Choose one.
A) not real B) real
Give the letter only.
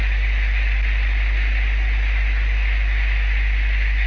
B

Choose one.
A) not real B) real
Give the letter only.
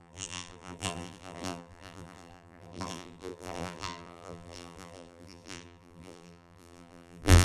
A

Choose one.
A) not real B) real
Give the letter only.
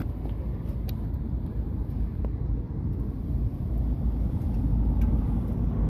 B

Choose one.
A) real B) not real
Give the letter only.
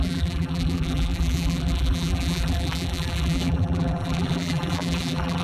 B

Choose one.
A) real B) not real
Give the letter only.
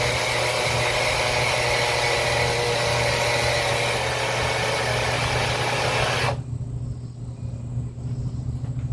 A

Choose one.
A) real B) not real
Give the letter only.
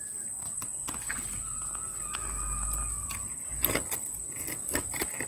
A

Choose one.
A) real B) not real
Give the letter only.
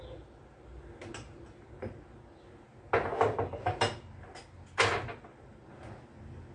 A